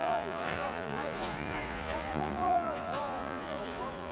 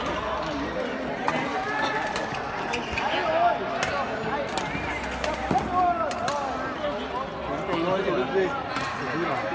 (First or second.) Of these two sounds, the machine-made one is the first